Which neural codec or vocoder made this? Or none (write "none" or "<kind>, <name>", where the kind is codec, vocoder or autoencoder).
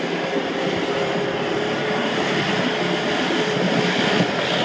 none